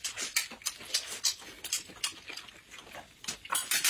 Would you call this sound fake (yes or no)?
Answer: no